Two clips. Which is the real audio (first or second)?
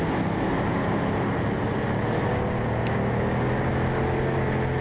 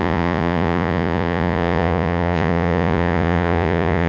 first